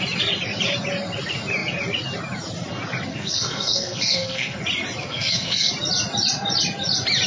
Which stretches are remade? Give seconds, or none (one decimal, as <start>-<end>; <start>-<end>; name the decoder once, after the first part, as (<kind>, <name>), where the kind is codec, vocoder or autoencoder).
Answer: 3.1-4.6 (codec, SNAC); 5.0-5.7